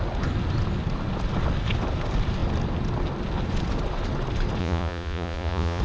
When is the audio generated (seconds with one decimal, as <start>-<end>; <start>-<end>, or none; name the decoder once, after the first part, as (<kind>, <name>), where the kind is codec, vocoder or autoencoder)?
4.6-5.8 (vocoder, Vocos)